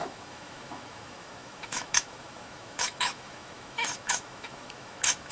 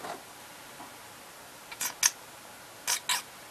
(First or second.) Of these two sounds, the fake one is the first